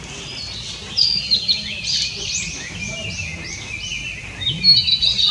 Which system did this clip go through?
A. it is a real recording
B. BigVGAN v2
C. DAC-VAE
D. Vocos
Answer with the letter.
A